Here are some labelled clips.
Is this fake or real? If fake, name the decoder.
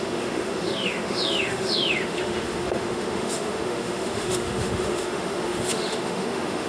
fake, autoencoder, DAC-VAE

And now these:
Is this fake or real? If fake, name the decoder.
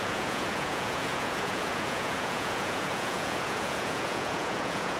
fake, vocoder, Vocos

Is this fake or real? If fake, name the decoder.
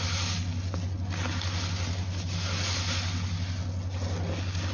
real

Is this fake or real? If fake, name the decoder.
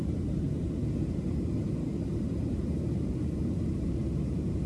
fake, vocoder, BigVGAN v2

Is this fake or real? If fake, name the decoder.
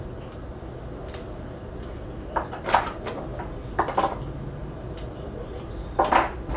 real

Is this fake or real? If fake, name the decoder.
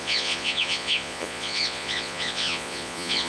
fake, vocoder, Vocos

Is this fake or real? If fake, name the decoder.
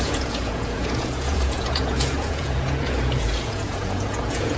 fake, vocoder, Vocos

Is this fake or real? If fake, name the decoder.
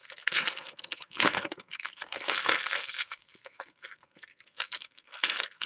fake, codec, SNAC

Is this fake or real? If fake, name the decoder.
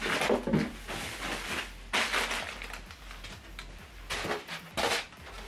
real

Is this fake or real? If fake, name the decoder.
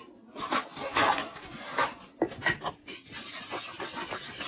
real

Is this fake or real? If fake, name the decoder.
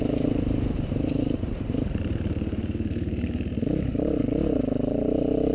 fake, vocoder, BigVGAN v2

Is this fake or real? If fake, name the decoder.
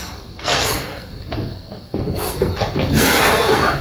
fake, codec, SNAC